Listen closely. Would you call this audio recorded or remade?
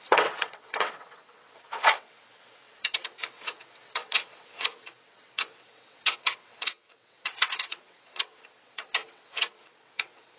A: remade